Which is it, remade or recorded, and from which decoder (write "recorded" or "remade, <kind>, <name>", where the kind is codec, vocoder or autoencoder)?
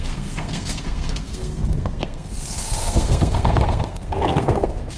remade, codec, SNAC